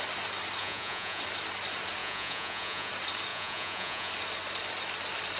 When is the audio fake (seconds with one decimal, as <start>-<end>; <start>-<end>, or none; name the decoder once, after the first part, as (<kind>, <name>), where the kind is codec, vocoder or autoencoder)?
0.6-1.2 (vocoder, Vocos); 2.0-2.9; 3.3-4.1